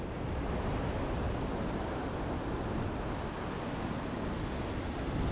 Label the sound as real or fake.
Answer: real